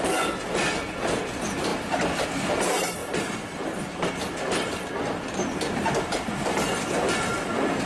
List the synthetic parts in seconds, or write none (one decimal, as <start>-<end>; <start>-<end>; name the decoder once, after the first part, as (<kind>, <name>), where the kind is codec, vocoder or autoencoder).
none